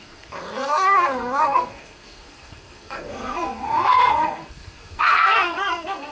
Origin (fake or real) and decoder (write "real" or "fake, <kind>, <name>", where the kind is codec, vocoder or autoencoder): fake, codec, SNAC